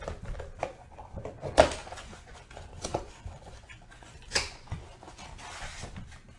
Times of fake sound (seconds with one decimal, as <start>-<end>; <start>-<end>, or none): 1.8-5.2